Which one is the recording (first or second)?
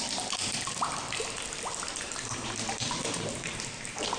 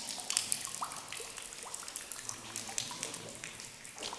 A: second